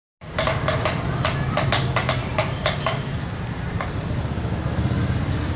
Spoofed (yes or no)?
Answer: no